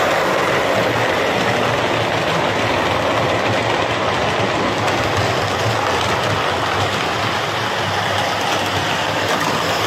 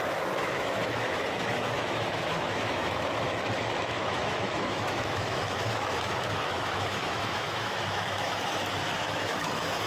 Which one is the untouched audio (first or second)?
first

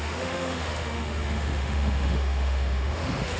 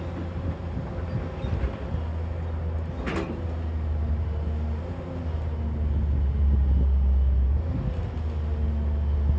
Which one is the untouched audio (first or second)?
second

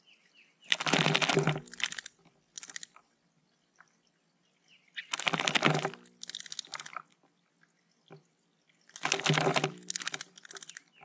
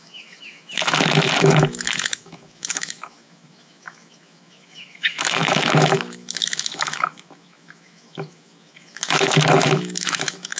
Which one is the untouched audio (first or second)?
first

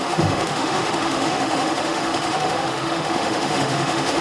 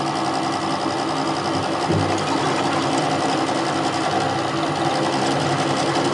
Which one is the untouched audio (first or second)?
second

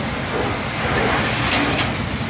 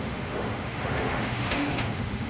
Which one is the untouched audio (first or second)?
first